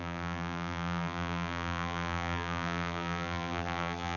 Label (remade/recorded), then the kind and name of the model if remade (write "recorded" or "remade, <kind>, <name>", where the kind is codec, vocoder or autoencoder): remade, vocoder, BigVGAN v2